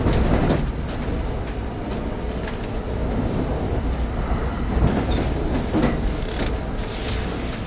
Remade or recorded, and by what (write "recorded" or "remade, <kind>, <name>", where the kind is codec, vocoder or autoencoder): recorded